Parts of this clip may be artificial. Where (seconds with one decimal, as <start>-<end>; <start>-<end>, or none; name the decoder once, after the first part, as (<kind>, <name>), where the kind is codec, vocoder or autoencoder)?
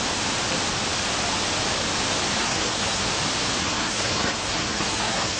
2.4-3.0 (codec, SNAC); 3.6-5.4